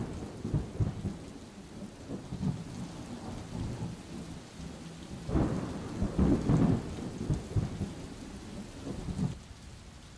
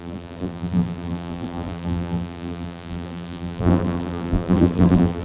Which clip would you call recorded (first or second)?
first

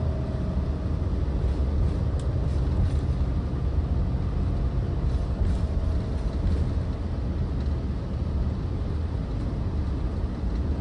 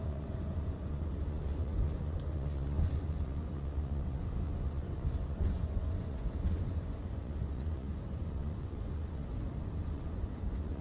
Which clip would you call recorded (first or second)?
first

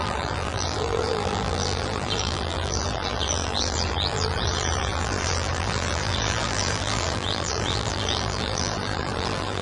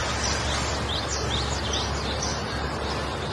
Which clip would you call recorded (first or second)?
second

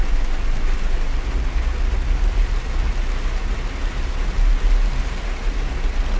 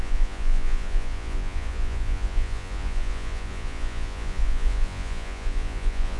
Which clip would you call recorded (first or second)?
first